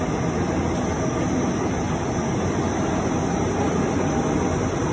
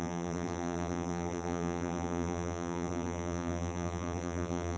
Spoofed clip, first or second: second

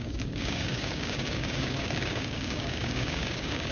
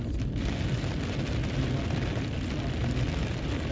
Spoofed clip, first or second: first